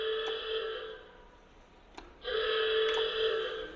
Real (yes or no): yes